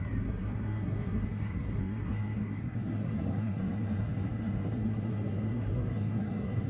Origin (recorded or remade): remade